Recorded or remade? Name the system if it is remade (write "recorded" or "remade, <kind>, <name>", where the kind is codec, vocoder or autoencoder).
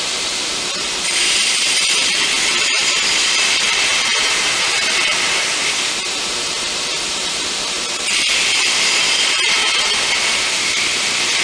remade, vocoder, BigVGAN v2